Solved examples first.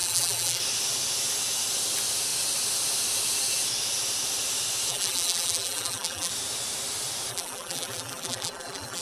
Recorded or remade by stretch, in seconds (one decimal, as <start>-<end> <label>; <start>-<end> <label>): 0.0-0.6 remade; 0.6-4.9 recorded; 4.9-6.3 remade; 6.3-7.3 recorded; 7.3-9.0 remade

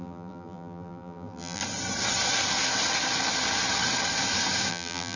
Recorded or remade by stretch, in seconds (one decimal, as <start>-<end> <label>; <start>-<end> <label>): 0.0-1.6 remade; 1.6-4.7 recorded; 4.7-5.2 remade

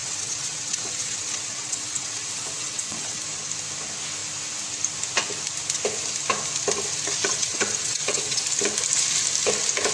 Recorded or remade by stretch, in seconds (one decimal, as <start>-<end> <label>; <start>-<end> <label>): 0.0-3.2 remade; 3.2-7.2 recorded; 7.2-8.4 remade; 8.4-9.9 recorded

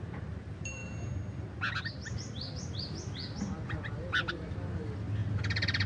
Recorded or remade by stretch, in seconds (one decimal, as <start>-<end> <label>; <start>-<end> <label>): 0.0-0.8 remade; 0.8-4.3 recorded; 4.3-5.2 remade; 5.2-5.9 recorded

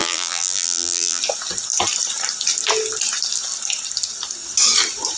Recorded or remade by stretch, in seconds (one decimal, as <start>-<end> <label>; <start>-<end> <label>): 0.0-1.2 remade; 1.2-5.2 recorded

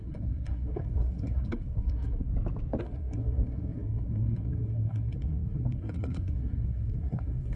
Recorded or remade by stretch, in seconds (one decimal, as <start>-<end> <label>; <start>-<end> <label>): 0.0-2.3 remade; 2.3-2.8 recorded; 2.8-7.6 remade

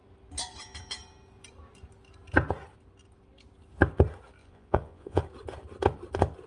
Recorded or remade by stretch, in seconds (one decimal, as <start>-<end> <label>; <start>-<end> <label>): 0.0-4.4 recorded; 4.4-5.2 remade; 5.2-6.5 recorded

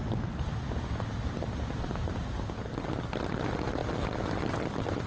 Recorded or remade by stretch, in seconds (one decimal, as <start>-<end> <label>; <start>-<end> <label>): 0.0-5.1 recorded